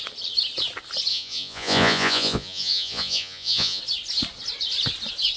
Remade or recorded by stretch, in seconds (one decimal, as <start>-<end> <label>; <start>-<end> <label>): 0.0-1.1 recorded; 1.1-3.8 remade; 3.8-5.4 recorded